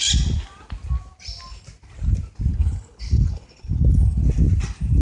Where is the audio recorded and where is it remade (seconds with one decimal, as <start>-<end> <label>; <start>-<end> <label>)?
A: 0.0-2.5 recorded; 2.5-4.3 remade; 4.3-5.0 recorded

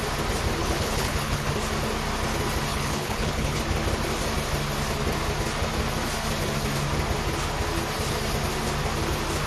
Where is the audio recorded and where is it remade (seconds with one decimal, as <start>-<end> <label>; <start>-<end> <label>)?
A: 0.0-0.6 recorded; 0.6-1.5 remade; 1.5-2.7 recorded; 2.7-3.6 remade; 3.6-9.5 recorded